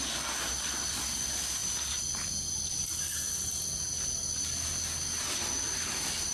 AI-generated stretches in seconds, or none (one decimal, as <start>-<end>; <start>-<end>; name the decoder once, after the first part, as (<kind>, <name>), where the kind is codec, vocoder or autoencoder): none